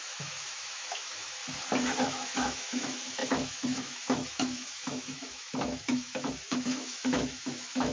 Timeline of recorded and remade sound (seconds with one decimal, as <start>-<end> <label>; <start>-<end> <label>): 0.0-1.4 remade; 1.4-2.0 recorded; 2.0-7.9 remade